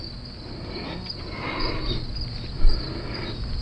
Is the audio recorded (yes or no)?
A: yes